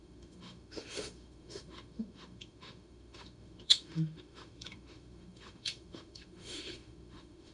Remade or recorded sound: remade